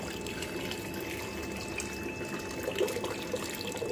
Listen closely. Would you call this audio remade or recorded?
recorded